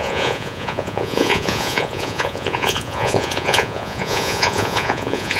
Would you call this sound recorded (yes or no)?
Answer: no